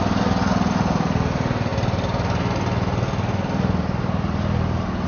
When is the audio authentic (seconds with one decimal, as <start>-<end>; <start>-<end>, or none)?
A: 0.0-5.1